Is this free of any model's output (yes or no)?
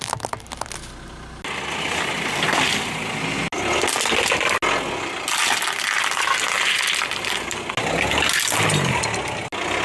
yes